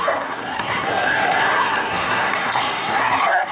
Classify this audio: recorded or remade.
remade